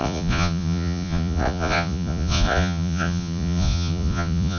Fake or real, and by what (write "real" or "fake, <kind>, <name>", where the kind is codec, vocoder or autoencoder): fake, vocoder, Vocos